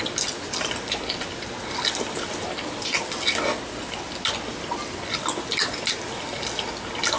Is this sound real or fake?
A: real